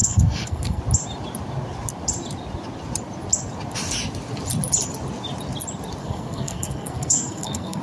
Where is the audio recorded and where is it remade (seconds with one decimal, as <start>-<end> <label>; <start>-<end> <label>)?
0.0-0.8 remade; 0.8-6.0 recorded; 6.0-7.8 remade